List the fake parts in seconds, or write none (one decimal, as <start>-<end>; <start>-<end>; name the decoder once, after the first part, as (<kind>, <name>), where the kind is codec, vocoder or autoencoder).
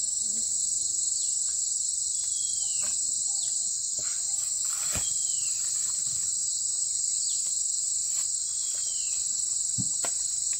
6.4-7.2 (vocoder, BigVGAN v2); 8.0-9.1